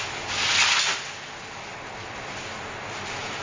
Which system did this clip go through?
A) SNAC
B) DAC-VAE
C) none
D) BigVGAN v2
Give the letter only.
C